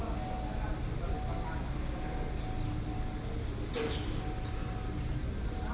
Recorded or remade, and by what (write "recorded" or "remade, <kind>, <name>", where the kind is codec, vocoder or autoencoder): recorded